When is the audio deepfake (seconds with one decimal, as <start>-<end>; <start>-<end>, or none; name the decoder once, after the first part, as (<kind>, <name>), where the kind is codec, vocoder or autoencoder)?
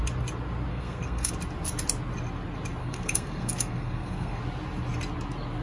0.7-1.3 (codec, SNAC); 2.8-4.4